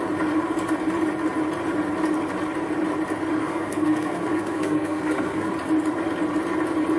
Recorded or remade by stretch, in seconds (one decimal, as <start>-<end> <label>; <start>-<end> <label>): 0.0-3.4 recorded; 3.4-5.5 remade; 5.5-7.0 recorded